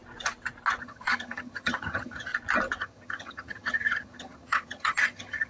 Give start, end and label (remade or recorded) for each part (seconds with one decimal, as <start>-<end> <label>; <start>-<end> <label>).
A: 0.0-0.8 recorded; 0.8-2.3 remade; 2.3-2.8 recorded; 2.8-5.5 remade